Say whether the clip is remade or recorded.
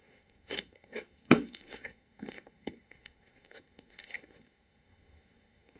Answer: remade